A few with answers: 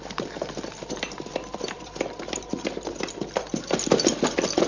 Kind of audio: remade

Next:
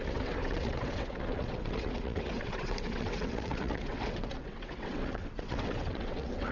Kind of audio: remade